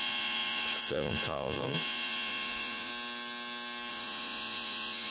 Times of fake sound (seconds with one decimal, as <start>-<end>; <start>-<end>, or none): 0.0-2.9; 3.9-5.1

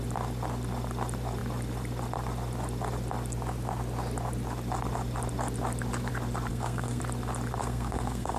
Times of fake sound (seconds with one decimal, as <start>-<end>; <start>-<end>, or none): 6.5-7.0; 7.6-8.4